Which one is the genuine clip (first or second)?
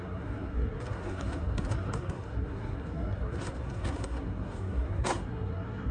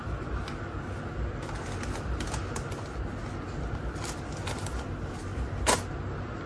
second